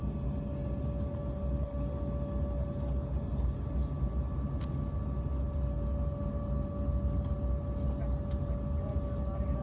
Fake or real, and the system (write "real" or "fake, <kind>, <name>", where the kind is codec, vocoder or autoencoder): real